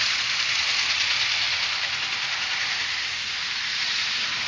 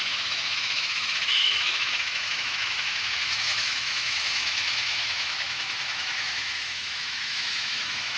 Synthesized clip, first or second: second